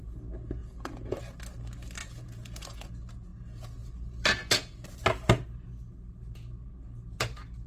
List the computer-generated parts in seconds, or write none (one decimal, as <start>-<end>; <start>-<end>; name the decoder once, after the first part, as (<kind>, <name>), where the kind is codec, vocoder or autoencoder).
0.6-1.2 (vocoder, Vocos); 2.0-2.9